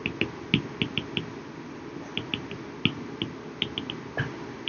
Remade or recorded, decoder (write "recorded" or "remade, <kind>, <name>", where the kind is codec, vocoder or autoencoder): recorded